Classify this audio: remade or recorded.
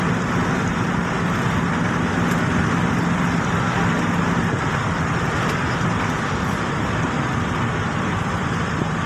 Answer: recorded